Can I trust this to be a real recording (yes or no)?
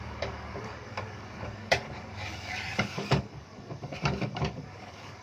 no